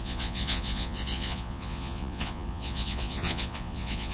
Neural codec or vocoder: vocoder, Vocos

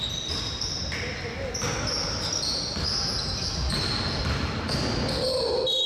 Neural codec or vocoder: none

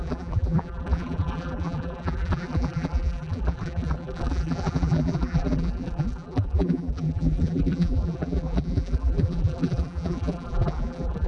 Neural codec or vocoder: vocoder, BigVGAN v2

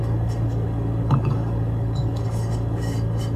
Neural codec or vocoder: codec, DAC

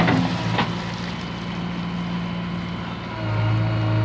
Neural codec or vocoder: none